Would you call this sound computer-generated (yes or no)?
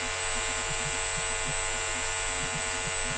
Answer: no